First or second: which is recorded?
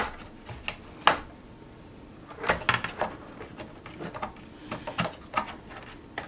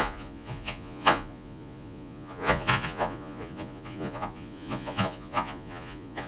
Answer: first